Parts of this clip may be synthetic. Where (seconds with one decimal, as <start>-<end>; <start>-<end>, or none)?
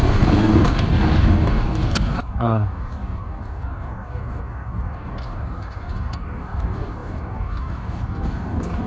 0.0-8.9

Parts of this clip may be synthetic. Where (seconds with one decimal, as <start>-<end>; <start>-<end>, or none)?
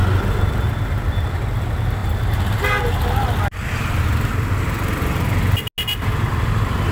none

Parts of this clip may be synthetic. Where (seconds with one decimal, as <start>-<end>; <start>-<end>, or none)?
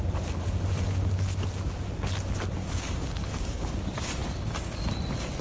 2.6-3.7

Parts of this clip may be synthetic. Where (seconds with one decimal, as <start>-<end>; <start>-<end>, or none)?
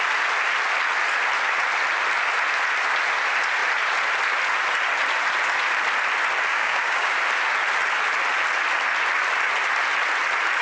6.5-7.1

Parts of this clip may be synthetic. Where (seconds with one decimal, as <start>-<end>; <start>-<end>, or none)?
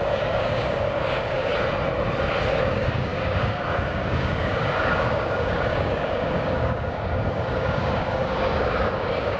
0.0-1.5; 2.6-9.4